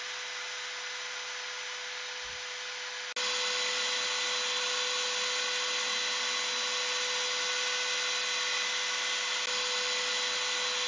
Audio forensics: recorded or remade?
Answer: recorded